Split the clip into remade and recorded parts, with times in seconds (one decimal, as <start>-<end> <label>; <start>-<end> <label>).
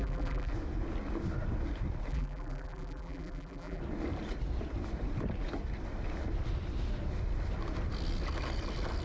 0.0-0.5 remade; 0.5-2.1 recorded; 2.1-3.8 remade; 3.8-9.0 recorded